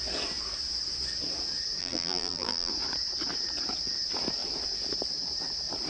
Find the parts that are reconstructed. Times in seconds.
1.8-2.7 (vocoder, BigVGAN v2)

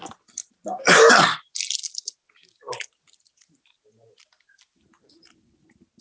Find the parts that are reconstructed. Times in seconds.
0.4-1.1 (vocoder, BigVGAN v2)

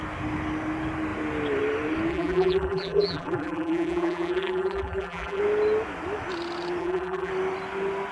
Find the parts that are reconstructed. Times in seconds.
2.1-5.4 (vocoder, BigVGAN v2); 6.8-7.3